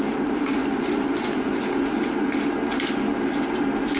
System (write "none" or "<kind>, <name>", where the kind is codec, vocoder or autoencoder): none